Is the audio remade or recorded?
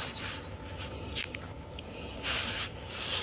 recorded